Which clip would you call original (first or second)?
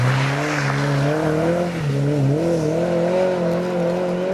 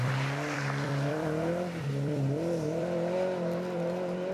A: first